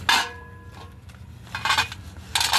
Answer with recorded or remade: recorded